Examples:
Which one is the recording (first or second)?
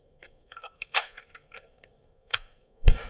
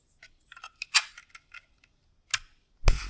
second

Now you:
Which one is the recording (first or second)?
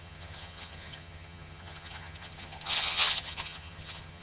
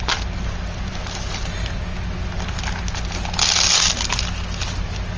second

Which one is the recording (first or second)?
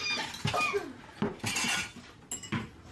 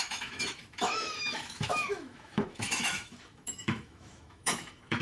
first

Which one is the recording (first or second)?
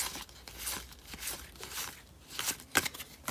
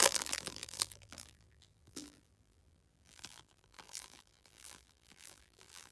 first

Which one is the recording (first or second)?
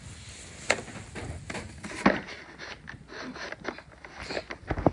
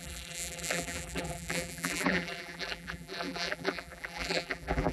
first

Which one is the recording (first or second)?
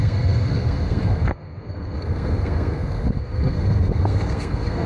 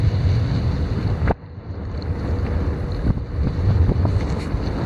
second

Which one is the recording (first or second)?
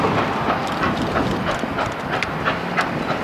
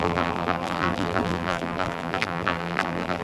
first